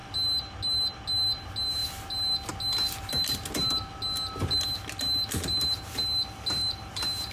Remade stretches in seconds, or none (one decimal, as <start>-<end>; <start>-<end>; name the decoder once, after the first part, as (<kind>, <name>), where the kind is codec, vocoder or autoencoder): none